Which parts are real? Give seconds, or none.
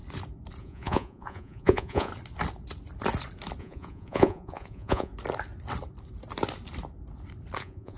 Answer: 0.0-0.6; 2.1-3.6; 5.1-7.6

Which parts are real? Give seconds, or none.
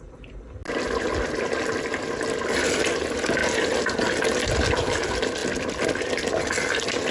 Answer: 0.0-7.1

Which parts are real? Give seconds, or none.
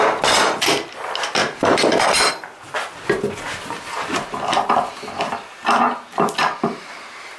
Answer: 0.0-1.4; 2.3-7.4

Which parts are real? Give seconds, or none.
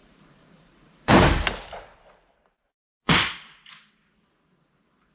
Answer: 1.1-5.1